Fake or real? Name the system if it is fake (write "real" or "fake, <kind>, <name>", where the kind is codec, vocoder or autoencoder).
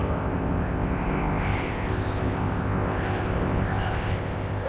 fake, codec, ZipCodec